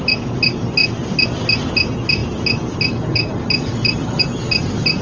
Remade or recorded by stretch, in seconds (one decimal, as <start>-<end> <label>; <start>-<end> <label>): 0.0-5.0 recorded